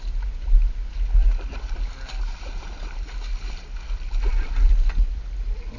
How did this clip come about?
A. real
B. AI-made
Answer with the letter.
A